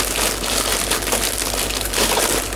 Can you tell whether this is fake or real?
real